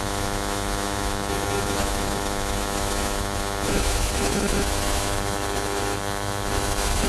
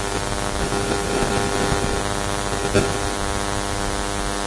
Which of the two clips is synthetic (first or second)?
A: first